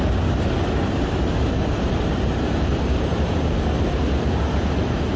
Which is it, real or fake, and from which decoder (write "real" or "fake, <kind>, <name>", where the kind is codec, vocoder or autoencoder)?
fake, vocoder, BigVGAN v2